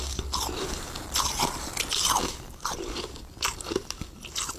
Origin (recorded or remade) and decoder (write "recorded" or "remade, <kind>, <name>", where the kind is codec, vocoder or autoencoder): recorded